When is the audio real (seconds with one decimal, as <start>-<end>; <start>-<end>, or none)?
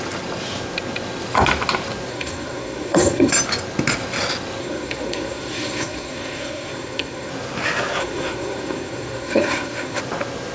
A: 0.0-2.1; 3.3-4.6; 7.3-8.0; 10.0-10.5